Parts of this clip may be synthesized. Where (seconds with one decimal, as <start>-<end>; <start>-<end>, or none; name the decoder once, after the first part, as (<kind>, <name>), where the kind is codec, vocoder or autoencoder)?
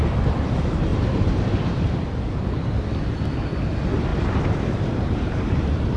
0.9-1.8 (vocoder, BigVGAN v2); 4.1-6.0